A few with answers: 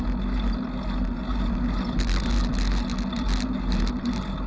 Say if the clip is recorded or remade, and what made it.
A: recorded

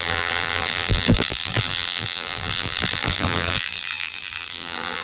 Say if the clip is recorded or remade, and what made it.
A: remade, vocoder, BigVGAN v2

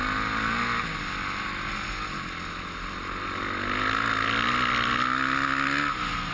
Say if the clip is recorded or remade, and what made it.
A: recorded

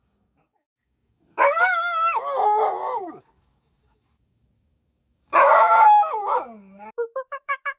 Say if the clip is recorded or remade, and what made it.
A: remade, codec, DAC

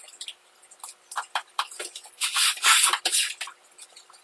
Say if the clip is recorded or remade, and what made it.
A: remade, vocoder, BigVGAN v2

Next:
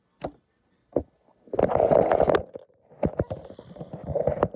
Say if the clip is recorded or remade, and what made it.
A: recorded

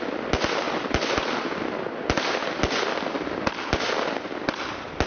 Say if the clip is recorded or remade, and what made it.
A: recorded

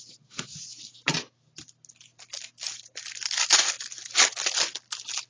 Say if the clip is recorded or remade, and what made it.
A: recorded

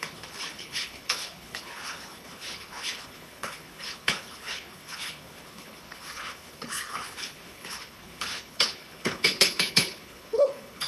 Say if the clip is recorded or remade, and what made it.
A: remade, codec, HILCodec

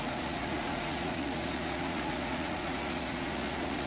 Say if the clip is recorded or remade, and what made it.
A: remade, vocoder, Vocos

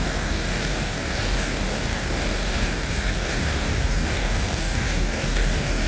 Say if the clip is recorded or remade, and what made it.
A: remade, codec, DAC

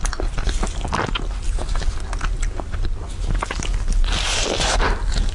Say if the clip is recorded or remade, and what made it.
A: recorded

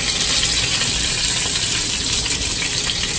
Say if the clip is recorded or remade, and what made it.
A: recorded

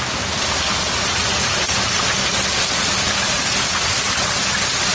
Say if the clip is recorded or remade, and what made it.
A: recorded